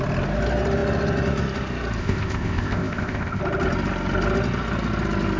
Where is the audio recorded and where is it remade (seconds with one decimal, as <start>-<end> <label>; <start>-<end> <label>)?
0.0-2.0 recorded; 2.0-3.4 remade; 3.4-5.4 recorded